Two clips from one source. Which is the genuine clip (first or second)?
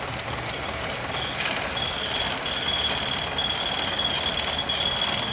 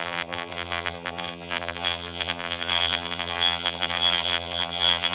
first